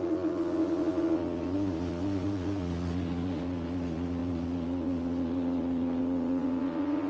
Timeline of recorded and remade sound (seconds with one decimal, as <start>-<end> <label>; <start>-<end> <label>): 0.0-7.1 remade